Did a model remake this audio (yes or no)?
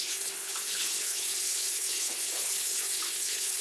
yes